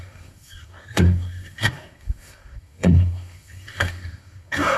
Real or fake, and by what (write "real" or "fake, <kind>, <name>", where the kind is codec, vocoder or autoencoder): fake, codec, SNAC